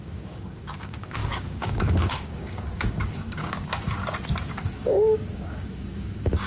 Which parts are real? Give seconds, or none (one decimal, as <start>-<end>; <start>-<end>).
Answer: 4.0-4.5